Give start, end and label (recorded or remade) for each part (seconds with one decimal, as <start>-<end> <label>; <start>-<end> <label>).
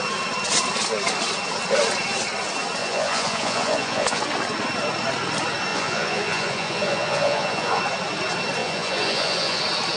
0.0-2.8 recorded; 2.8-4.2 remade; 4.2-5.7 recorded; 5.7-7.8 remade; 7.8-8.6 recorded; 8.6-9.6 remade; 9.6-10.0 recorded